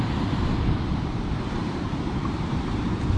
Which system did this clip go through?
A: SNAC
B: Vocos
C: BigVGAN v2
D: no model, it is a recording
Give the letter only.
C